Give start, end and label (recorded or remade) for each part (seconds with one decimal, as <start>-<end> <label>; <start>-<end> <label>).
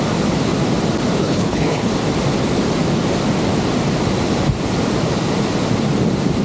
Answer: 0.0-1.2 recorded; 1.2-1.9 remade; 1.9-6.4 recorded